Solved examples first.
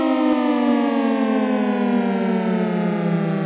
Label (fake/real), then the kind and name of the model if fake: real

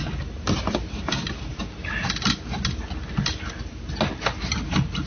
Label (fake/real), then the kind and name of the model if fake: real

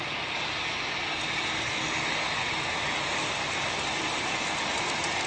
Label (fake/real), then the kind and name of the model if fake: real